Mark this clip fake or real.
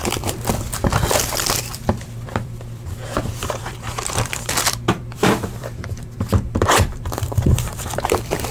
fake